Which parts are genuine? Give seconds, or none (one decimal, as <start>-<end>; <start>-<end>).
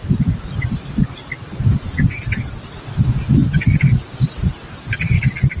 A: 0.0-5.6